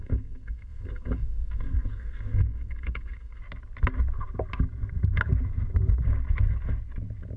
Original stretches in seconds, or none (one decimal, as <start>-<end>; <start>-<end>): 3.4-7.4